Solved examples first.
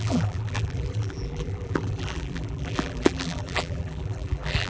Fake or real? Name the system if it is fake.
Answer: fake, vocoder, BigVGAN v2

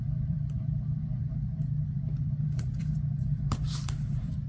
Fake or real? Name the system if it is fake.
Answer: fake, vocoder, BigVGAN v2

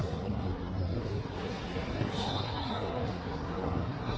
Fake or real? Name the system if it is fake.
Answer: fake, codec, SNAC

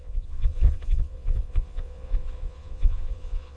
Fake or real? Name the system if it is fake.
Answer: fake, vocoder, Vocos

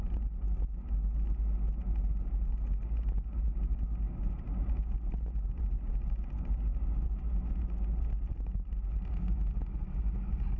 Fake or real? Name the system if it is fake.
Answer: real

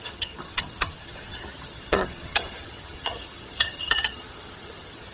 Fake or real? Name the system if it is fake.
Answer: fake, vocoder, HiFi-GAN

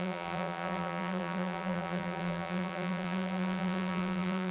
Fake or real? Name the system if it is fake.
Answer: fake, vocoder, BigVGAN v2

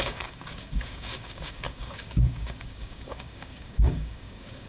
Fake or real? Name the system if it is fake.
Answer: fake, codec, DAC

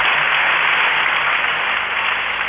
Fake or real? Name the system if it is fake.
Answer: real